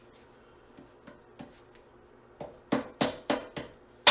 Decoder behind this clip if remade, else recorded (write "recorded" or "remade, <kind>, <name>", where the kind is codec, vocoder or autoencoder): recorded